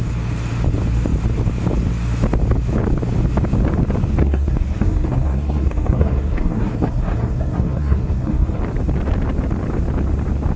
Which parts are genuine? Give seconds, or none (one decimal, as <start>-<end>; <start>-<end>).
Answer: 0.0-4.2; 8.6-10.6